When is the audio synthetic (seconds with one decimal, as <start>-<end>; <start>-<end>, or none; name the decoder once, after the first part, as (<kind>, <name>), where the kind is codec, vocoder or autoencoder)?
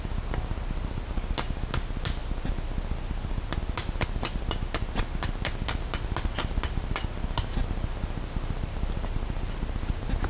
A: none